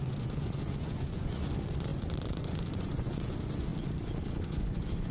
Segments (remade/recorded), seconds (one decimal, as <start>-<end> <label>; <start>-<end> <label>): 0.0-3.7 remade; 3.7-4.2 recorded; 4.2-5.1 remade